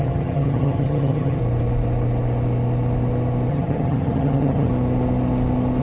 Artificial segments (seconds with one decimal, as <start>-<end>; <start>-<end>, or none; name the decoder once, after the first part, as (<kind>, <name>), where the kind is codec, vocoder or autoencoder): 0.0-1.4 (vocoder, HiFi-GAN); 3.5-4.7